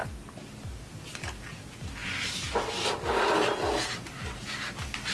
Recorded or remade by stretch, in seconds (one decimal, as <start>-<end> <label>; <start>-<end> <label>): 0.0-0.9 remade; 0.9-5.1 recorded